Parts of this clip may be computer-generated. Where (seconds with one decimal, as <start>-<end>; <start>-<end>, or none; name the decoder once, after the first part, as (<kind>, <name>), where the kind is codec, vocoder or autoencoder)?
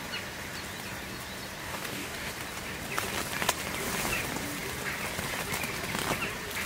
1.6-2.3 (codec, DAC)